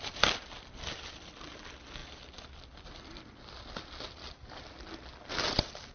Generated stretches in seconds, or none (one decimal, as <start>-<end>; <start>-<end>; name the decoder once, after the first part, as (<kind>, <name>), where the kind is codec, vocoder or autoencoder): none